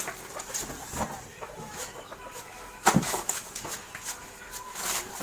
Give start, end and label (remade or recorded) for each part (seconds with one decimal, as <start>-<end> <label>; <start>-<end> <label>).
0.0-1.3 recorded; 1.3-4.4 remade; 4.4-5.2 recorded